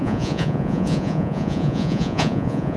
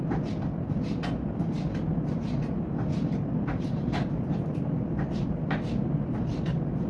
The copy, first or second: first